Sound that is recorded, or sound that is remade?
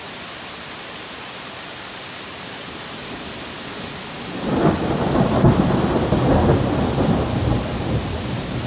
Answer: recorded